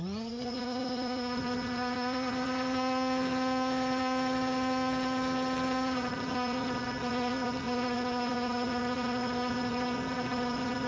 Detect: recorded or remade remade